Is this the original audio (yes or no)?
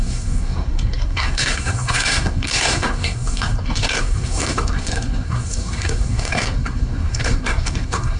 no